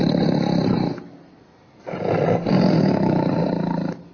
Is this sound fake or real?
real